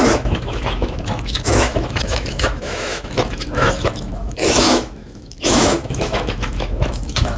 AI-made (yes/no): yes